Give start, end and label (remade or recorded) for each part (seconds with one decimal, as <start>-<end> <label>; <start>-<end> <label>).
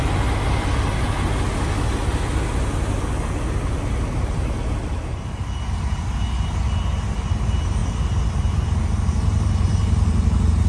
0.0-10.7 recorded